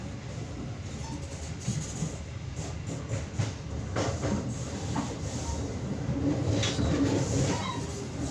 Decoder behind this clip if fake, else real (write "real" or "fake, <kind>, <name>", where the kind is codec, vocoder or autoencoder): real